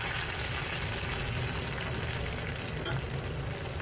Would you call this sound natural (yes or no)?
yes